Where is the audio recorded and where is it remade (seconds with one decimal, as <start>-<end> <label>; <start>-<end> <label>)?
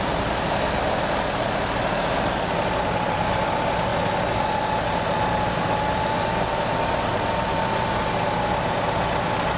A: 0.0-9.6 recorded